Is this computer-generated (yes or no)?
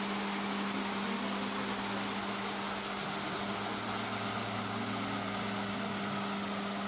no